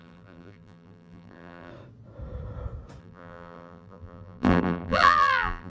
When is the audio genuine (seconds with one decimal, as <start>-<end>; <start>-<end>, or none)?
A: 1.7-3.0